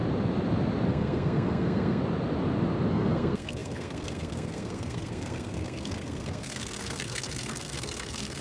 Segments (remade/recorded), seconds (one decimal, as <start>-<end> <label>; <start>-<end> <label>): 0.0-0.9 recorded; 0.9-2.0 remade; 2.0-2.9 recorded; 2.9-8.4 remade